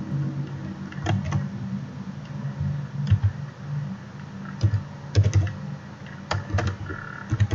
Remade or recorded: recorded